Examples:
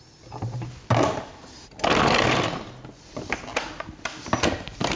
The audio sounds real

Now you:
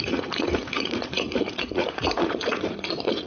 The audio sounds fake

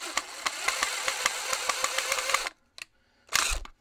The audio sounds real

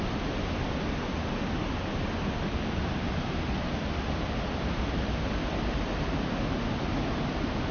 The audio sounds real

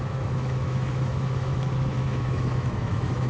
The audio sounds fake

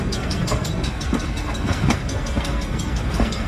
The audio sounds fake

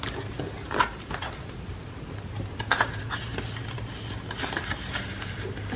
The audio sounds real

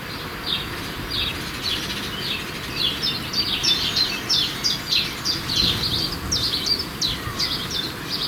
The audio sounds real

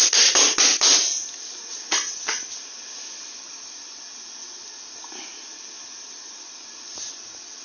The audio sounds real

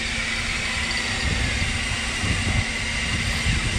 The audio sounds real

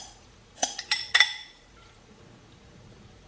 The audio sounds fake